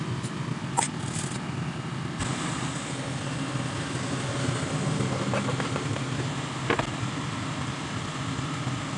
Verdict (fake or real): real